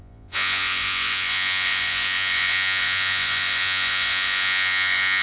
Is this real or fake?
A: fake